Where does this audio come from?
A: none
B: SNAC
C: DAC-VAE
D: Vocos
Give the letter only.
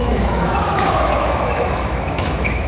C